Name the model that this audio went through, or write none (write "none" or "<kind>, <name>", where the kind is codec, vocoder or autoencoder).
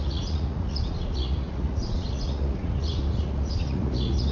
vocoder, Vocos